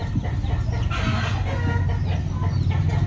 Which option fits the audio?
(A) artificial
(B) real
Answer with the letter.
B